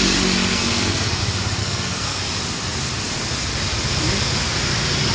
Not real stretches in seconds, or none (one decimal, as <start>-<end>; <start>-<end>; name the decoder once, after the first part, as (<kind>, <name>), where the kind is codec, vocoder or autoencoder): 0.5-1.2 (codec, SNAC); 1.6-2.2